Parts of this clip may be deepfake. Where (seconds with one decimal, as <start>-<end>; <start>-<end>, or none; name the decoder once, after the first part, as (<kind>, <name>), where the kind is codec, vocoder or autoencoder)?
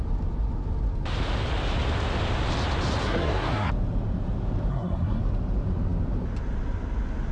3.0-3.7 (codec, SNAC); 4.7-5.2